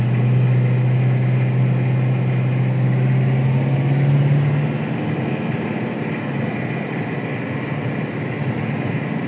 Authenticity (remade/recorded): recorded